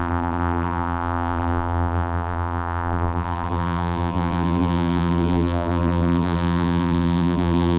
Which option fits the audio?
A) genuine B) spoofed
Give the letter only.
B